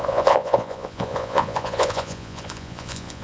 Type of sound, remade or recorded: remade